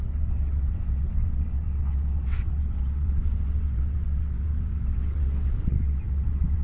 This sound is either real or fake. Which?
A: fake